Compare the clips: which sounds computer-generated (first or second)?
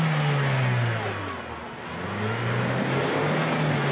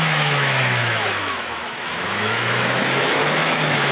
second